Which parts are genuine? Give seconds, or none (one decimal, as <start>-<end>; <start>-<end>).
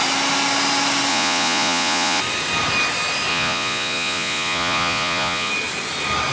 0.0-1.1; 2.2-3.3; 5.5-6.3